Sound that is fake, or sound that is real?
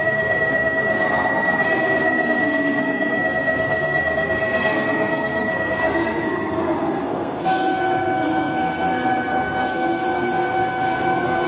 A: fake